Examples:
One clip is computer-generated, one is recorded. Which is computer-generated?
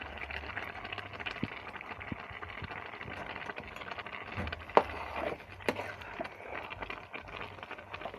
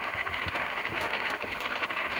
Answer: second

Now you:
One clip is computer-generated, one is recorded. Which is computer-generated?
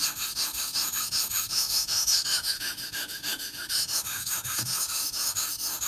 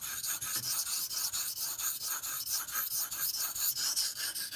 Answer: first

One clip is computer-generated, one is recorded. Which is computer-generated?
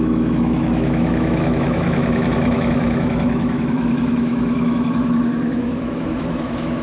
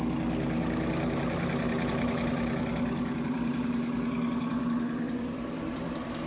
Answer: first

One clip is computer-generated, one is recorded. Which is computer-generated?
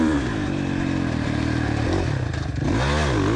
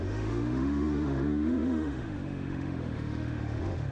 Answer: second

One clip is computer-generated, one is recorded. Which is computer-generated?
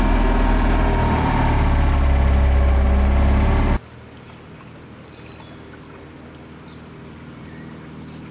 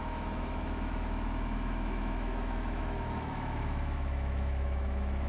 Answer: second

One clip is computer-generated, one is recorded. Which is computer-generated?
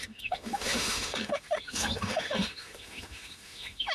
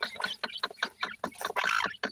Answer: first